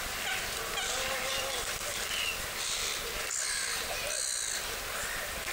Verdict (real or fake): real